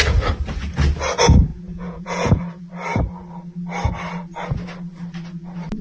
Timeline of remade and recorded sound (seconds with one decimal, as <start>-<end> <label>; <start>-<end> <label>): 0.0-1.5 recorded; 1.5-2.4 remade; 2.4-5.8 recorded